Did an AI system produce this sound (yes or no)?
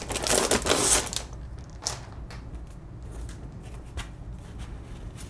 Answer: no